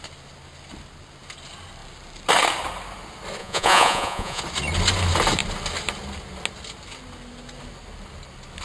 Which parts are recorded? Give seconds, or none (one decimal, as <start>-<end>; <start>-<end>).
0.0-3.4; 4.4-8.6